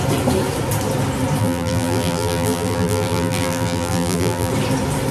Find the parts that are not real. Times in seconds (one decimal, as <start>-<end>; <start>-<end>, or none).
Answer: 1.4-4.5